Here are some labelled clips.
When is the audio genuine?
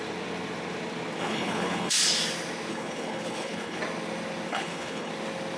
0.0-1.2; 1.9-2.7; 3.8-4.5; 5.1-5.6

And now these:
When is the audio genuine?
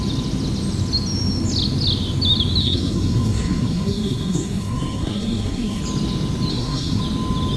0.0-2.6; 5.8-6.5; 7.0-7.6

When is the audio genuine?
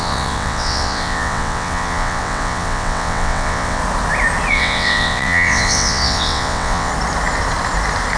3.8-4.5; 6.9-8.2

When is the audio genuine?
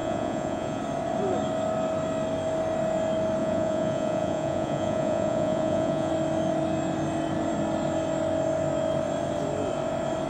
0.8-3.4; 6.1-10.3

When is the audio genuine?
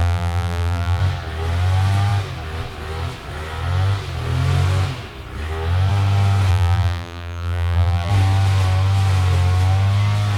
1.0-6.5; 8.1-10.4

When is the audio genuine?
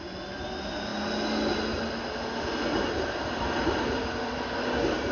0.0-5.1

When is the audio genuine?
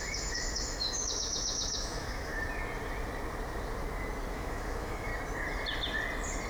2.3-4.3; 5.1-6.5